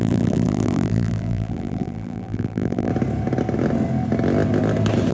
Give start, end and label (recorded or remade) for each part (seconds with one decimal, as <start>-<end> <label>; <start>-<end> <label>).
0.0-2.9 remade; 2.9-5.1 recorded